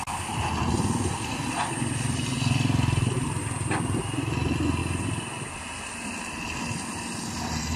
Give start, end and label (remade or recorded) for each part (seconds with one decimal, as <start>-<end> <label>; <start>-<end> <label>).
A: 0.0-7.8 recorded